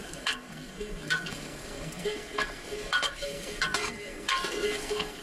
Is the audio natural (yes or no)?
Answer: no